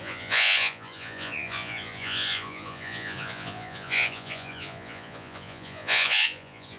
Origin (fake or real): fake